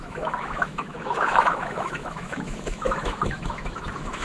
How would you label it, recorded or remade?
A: remade